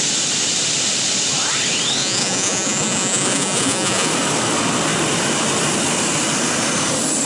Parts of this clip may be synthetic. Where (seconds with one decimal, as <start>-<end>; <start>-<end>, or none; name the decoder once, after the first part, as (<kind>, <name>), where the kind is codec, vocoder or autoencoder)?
2.0-4.1 (vocoder, Vocos)